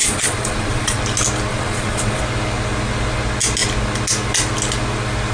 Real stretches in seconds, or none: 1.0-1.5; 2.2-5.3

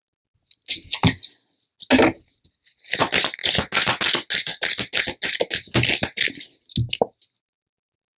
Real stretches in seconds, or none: 0.0-8.2

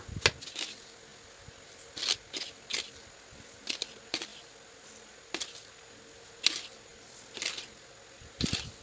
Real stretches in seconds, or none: 0.0-8.8

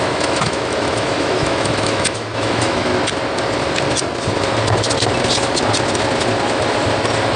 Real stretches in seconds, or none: 2.9-7.4

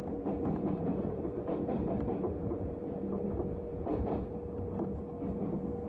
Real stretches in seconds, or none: 1.2-2.1; 3.0-3.7; 4.3-5.9

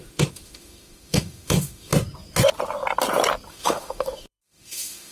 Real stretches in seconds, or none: 1.9-3.5

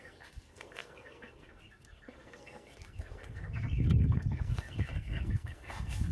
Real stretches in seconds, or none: none

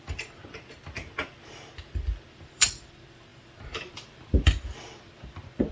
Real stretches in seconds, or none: 0.4-2.3